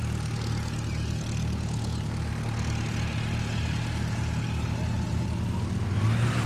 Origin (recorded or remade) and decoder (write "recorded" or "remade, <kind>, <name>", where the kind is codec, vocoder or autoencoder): recorded